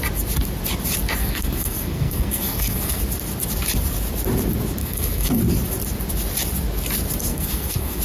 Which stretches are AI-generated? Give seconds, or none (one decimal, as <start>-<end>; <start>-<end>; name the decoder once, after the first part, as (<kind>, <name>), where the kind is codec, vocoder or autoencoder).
1.2-3.0 (codec, SNAC); 4.8-5.4; 7.3-8.0

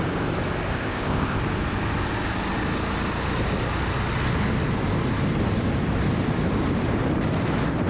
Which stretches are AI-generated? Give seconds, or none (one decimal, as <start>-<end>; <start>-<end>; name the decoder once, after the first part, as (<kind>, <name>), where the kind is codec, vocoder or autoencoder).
0.7-1.4 (codec, ZipCodec)

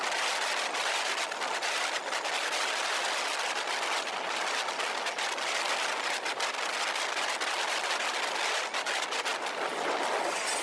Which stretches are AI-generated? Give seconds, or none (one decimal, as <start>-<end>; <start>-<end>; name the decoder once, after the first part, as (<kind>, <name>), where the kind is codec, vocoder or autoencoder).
none

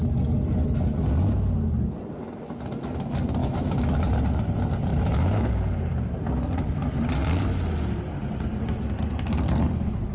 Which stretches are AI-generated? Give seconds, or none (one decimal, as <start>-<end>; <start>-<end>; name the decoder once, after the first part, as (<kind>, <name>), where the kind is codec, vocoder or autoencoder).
3.4-4.0 (autoencoder, DAC-VAE); 4.9-5.5